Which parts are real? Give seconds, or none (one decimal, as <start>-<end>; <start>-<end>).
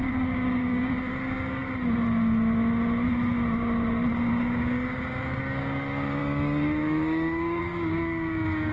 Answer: 1.6-4.3